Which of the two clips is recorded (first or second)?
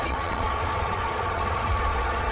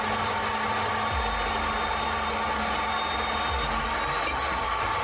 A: second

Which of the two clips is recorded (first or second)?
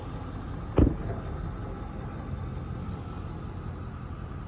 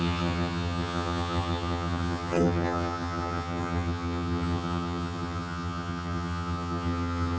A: first